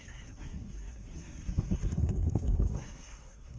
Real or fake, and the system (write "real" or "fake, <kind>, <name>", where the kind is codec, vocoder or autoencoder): fake, codec, SNAC